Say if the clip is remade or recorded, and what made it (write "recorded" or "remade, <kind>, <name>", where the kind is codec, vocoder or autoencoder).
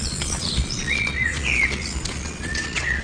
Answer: remade, vocoder, Vocos